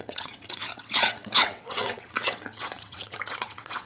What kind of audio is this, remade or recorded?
remade